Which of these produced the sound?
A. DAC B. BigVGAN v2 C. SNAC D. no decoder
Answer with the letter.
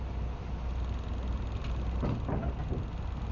D